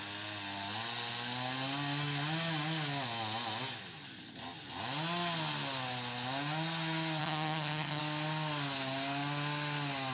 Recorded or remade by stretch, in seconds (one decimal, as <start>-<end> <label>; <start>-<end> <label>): 0.0-7.2 recorded; 7.2-8.0 remade; 8.0-10.1 recorded